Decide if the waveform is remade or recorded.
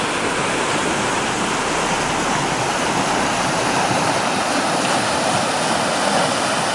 recorded